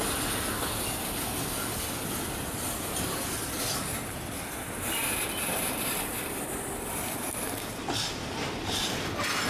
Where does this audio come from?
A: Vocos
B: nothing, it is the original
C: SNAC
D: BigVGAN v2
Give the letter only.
D